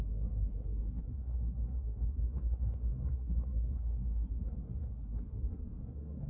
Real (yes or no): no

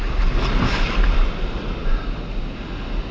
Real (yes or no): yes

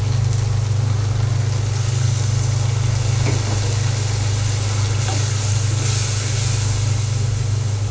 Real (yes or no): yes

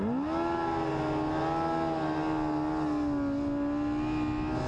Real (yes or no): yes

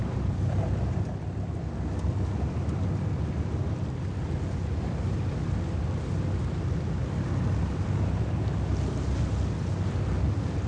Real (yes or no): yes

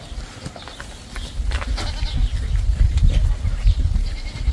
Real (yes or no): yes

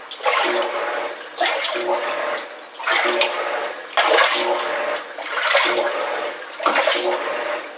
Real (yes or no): yes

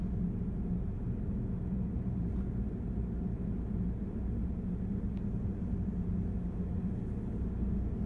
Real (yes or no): yes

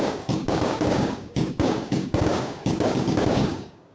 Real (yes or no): no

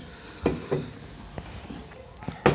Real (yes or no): yes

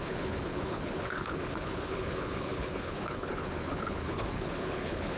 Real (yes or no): no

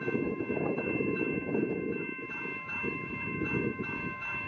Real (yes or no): no